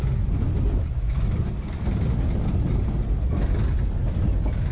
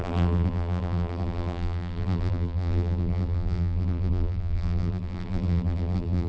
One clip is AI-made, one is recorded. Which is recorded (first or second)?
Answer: first